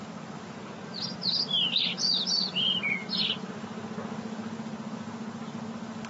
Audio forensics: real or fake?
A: real